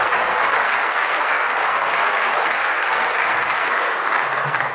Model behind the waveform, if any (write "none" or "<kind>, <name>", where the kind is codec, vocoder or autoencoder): codec, SNAC